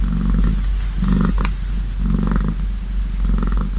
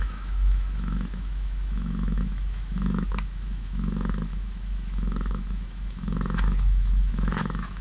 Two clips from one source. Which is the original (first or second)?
first